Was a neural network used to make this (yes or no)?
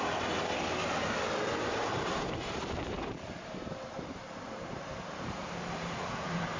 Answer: yes